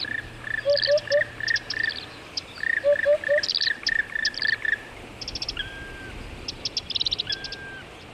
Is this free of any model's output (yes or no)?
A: yes